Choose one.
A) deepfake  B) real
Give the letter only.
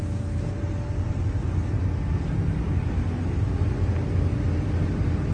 B